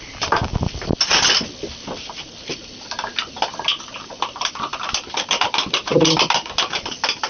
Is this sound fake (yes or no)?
no